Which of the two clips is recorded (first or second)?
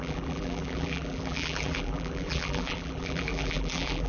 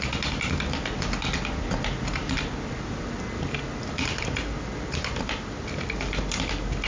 second